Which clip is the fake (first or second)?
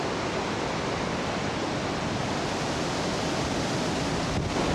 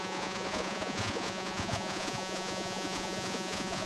second